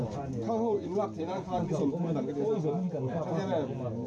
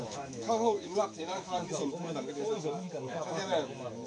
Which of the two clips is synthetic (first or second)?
second